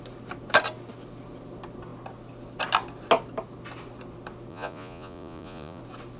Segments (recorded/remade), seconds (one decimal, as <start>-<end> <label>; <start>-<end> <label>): 0.0-4.5 recorded; 4.5-5.8 remade; 5.8-6.2 recorded